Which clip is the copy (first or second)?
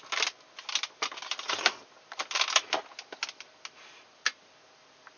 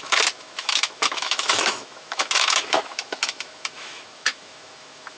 second